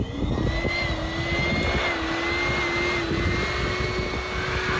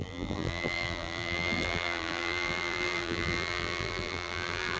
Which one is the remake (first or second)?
second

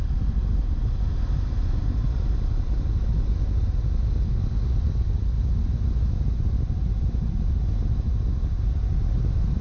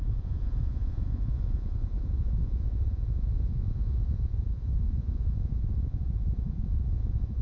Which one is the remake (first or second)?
second